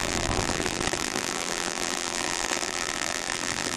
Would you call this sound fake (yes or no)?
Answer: yes